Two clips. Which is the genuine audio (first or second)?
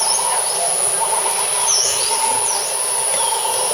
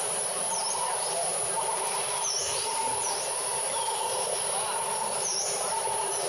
first